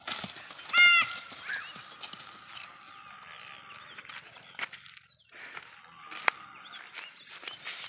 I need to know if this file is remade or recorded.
recorded